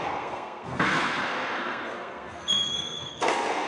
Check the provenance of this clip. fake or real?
fake